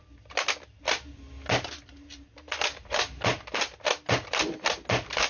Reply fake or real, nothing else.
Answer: real